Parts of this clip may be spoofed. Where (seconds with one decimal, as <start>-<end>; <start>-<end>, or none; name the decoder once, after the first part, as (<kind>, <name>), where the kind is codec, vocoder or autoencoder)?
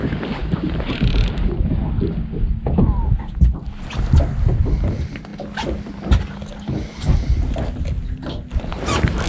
none